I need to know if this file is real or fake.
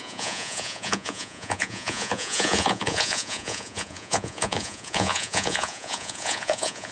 fake